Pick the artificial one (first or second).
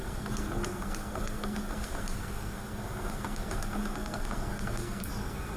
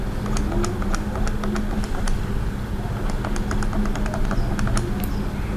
first